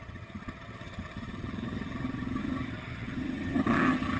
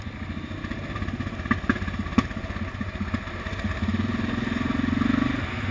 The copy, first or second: first